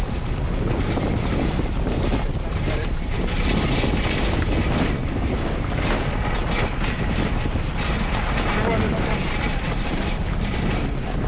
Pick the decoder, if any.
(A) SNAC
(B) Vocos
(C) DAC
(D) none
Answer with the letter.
D